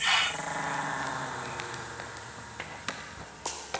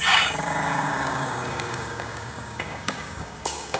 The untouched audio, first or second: first